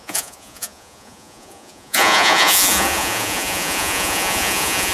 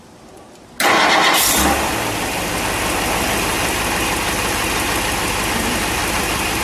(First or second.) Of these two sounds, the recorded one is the second